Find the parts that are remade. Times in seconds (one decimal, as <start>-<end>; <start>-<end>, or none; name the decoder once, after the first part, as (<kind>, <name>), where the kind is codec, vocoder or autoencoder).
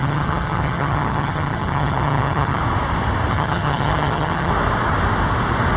0.0-2.6 (vocoder, HiFi-GAN); 3.3-4.5